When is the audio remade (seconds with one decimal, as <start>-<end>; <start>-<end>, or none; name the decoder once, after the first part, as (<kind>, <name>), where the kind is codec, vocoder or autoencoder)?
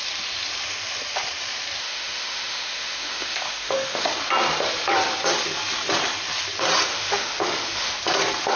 1.8-4.0 (autoencoder, DAC-VAE); 6.9-8.0